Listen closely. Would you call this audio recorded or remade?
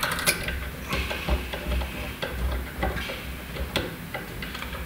recorded